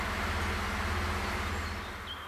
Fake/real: real